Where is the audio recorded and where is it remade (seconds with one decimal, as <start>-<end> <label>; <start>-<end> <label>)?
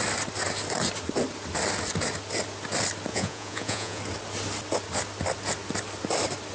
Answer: 0.0-3.1 recorded; 3.1-4.0 remade; 4.0-6.5 recorded